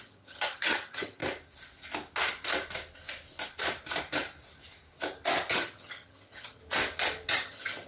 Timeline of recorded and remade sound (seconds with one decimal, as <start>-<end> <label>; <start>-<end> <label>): 0.0-1.2 remade; 1.2-5.5 recorded; 5.5-6.6 remade; 6.6-7.3 recorded; 7.3-7.9 remade

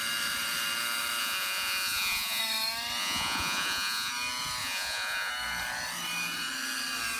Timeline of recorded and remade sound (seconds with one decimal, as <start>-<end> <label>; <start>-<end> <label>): 0.0-1.2 recorded; 1.2-2.4 remade; 2.4-3.0 recorded; 3.0-4.1 remade; 4.1-4.6 recorded; 4.6-5.3 remade; 5.3-7.2 recorded

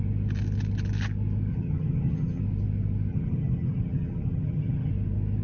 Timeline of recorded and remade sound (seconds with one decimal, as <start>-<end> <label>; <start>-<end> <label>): 0.0-1.5 recorded; 1.5-2.4 remade; 2.4-3.1 recorded; 3.1-4.9 remade; 4.9-5.4 recorded

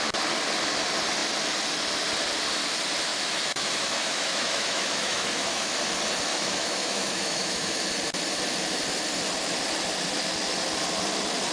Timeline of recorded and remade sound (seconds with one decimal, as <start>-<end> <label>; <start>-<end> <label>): 0.0-3.1 recorded; 3.1-5.7 remade; 5.7-6.3 recorded; 6.3-7.8 remade; 7.8-11.5 recorded

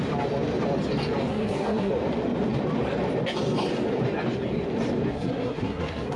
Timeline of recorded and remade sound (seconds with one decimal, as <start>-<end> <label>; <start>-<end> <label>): 0.0-1.3 recorded; 1.3-1.9 remade; 1.9-5.1 recorded; 5.1-6.2 remade

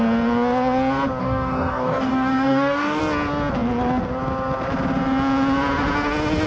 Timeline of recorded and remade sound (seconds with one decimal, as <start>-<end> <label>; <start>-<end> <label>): 0.0-1.2 recorded; 1.2-3.0 remade; 3.0-6.5 recorded

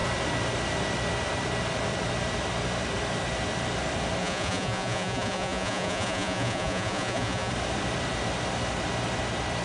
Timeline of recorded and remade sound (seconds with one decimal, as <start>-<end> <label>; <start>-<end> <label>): 0.0-4.2 recorded; 4.2-7.5 remade; 7.5-9.6 recorded